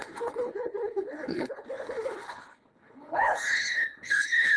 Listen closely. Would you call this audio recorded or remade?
remade